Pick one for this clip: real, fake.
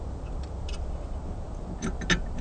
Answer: real